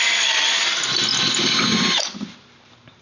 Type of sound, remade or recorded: recorded